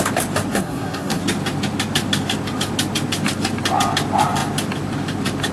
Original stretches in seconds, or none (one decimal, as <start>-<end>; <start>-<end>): 0.0-0.5; 1.2-5.5